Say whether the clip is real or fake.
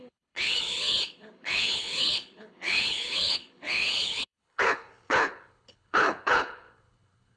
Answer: fake